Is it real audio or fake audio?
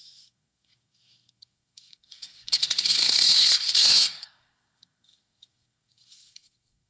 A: fake